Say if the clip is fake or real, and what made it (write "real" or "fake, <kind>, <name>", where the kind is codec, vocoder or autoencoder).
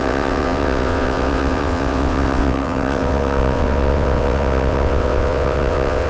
fake, vocoder, WaveNeXt